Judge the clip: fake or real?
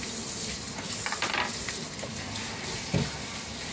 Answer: real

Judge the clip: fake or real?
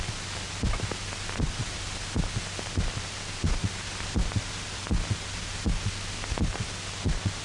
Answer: real